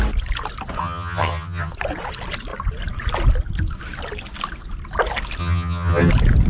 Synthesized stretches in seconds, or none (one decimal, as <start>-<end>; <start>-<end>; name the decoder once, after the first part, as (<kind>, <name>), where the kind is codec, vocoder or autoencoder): 0.8-1.7 (vocoder, HiFi-GAN); 5.4-6.1